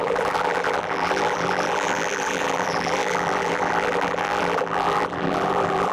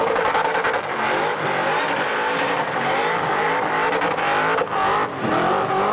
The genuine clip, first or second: second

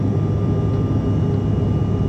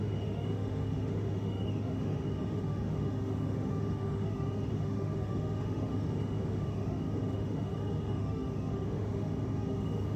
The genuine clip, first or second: first